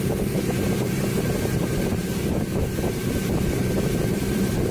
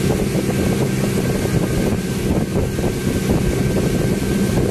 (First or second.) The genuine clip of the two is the second